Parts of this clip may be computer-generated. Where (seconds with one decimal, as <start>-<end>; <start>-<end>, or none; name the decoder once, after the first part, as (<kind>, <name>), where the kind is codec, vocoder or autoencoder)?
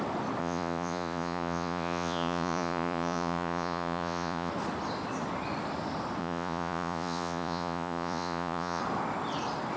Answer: 0.4-4.5 (vocoder, Vocos); 6.2-8.8